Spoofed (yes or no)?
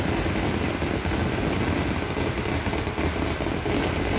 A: no